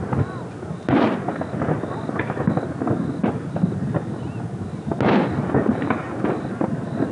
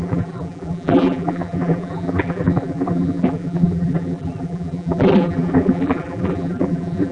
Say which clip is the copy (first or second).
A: second